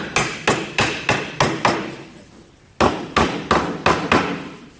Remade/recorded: recorded